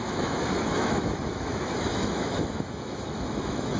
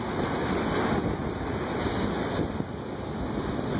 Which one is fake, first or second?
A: first